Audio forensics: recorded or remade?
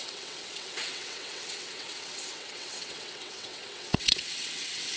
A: remade